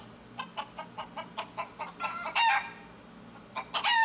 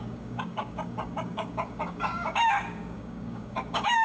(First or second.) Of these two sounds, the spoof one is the second